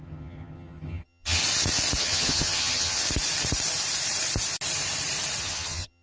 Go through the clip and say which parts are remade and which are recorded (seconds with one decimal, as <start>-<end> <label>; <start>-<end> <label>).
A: 0.0-1.4 remade; 1.4-2.0 recorded; 2.0-3.0 remade; 3.0-5.4 recorded; 5.4-6.0 remade